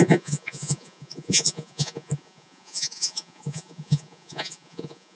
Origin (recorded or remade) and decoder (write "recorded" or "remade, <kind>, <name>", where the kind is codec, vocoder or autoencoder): remade, vocoder, Vocos